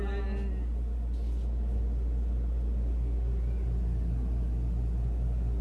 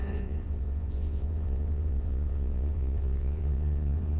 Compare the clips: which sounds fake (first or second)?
second